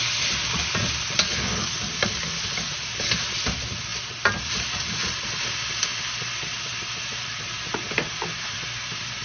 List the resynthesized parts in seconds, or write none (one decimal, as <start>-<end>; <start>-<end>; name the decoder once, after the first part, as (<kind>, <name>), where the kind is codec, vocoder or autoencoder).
none